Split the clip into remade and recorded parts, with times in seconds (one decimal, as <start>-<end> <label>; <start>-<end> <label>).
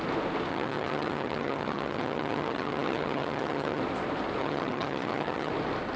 0.0-0.5 recorded; 0.5-3.8 remade; 3.8-4.4 recorded; 4.4-5.5 remade; 5.5-6.0 recorded